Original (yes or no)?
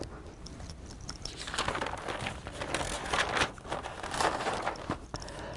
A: yes